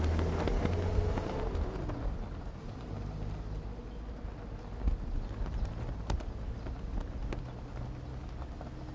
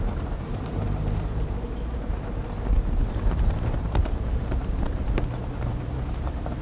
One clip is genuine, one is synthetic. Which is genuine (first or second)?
first